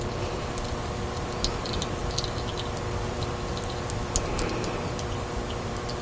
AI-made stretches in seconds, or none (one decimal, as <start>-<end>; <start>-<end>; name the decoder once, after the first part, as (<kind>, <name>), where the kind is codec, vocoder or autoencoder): none